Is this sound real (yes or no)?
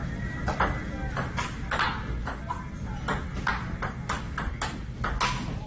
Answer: yes